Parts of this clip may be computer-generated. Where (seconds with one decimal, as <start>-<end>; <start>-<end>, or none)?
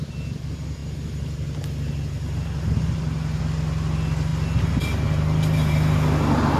none